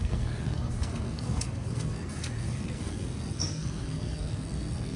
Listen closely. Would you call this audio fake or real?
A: fake